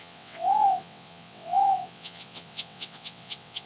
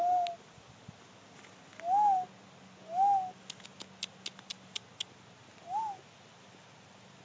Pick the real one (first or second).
second